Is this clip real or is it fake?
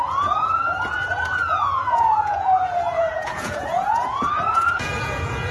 fake